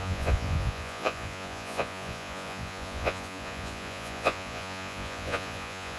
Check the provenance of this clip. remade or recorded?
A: remade